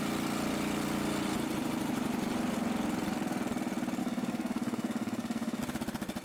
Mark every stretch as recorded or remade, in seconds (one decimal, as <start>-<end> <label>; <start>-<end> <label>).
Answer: 0.0-4.0 recorded; 4.0-5.6 remade; 5.6-6.2 recorded